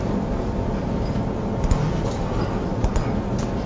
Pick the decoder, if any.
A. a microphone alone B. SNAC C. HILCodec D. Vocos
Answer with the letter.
A